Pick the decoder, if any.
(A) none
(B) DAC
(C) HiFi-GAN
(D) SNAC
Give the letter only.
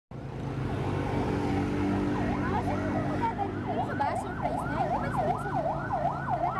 A